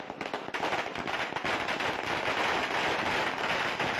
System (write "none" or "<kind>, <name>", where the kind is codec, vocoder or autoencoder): none